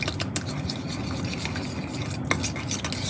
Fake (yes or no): no